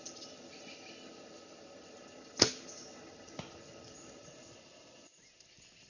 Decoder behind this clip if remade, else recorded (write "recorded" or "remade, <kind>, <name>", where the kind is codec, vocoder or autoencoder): recorded